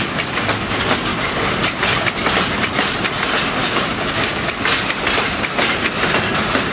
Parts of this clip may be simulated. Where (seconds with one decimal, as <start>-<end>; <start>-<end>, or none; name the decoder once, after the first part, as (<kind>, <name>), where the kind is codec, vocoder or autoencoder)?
3.6-4.5 (codec, DAC)